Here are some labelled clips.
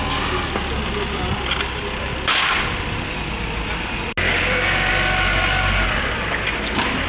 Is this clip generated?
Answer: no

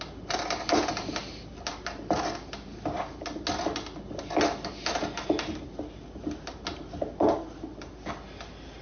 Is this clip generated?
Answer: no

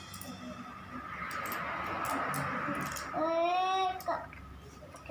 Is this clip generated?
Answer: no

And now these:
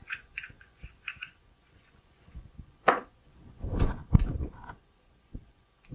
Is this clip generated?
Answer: yes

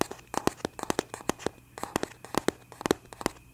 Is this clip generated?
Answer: no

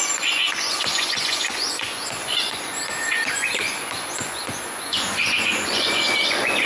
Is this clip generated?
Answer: yes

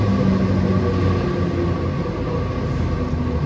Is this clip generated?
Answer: no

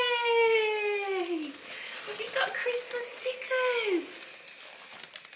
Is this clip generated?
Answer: no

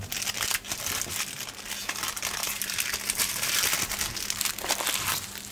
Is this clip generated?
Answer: no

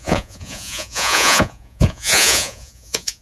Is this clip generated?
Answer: yes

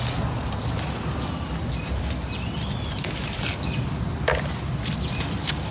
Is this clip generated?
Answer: no